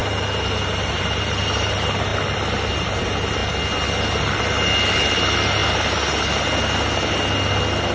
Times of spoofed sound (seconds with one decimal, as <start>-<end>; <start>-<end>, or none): none

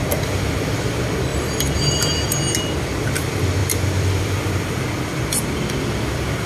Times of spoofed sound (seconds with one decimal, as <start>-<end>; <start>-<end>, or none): 3.6-5.4

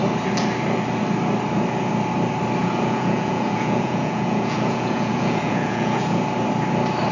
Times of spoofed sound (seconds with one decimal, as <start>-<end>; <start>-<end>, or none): 2.6-6.2

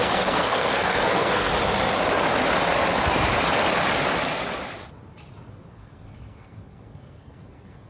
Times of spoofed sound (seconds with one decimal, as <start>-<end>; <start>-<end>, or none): 0.0-1.5; 5.7-7.9